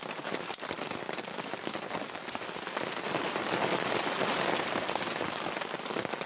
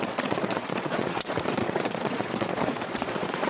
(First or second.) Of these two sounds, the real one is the first